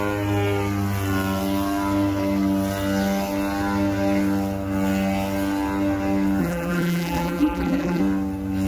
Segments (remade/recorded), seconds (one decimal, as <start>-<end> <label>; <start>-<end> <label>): 0.0-6.4 recorded; 6.4-8.0 remade; 8.0-8.7 recorded